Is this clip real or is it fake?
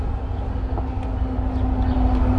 real